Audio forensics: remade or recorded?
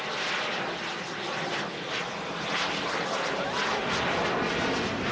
recorded